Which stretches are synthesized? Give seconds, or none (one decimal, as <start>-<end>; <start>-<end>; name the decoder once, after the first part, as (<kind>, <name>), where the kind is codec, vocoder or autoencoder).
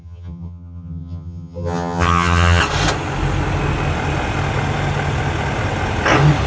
0.0-2.6 (vocoder, HiFi-GAN)